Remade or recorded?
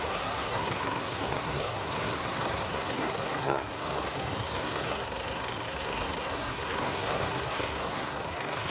remade